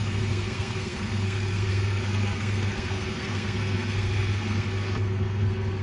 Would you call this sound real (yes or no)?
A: no